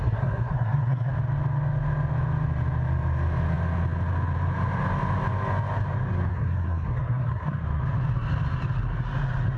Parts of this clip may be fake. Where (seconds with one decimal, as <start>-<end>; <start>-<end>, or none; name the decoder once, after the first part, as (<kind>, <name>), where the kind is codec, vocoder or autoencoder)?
0.0-1.1 (codec, SNAC); 6.3-7.6